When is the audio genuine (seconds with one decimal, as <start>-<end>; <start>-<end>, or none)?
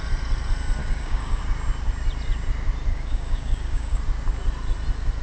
0.0-0.8; 1.4-2.9; 4.0-5.2